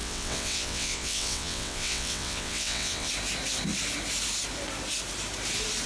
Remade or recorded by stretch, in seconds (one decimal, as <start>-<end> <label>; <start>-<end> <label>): 0.0-3.1 remade; 3.1-5.9 recorded